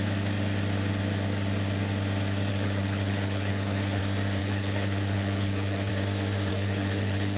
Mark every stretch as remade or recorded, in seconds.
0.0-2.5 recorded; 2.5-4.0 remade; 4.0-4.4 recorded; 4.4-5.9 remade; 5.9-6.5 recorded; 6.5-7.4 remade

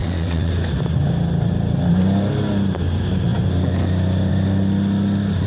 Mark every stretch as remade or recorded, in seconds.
0.0-0.5 remade; 0.5-5.5 recorded

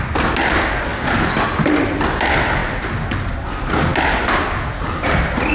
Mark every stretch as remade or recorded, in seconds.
0.0-5.5 recorded

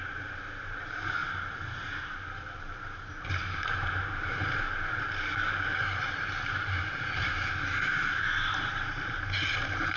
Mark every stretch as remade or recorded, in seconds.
0.0-1.2 remade; 1.2-1.7 recorded; 1.7-10.0 remade

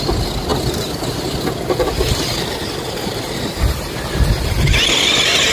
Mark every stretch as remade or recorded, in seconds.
0.0-5.5 recorded

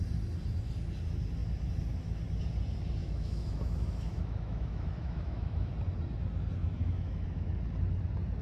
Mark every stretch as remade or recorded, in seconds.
0.0-3.0 recorded; 3.0-5.7 remade; 5.7-6.6 recorded; 6.6-7.5 remade; 7.5-8.4 recorded

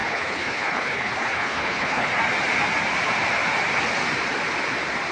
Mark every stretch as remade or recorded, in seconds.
0.0-2.1 remade; 2.1-5.1 recorded

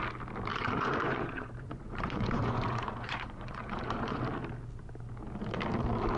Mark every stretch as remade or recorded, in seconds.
0.0-0.5 recorded; 0.5-4.2 remade; 4.2-6.2 recorded